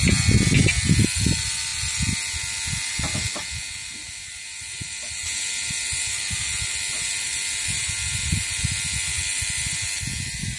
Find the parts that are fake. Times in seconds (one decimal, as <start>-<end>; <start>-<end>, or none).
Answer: none